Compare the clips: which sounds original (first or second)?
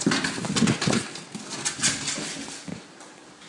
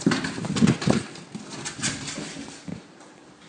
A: first